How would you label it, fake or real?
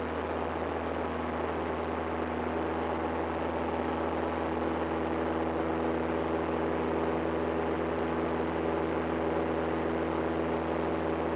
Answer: real